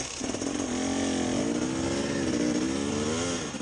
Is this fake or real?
real